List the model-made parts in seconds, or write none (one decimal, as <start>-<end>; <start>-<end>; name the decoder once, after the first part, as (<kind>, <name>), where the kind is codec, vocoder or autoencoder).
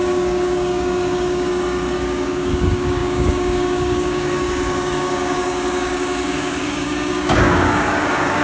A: 0.0-8.4 (codec, DAC)